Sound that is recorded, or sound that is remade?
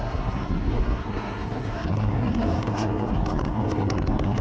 remade